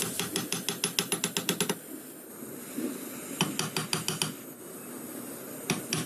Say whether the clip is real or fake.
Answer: real